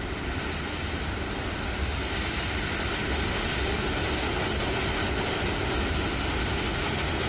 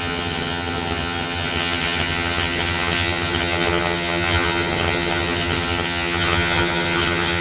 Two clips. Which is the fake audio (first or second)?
second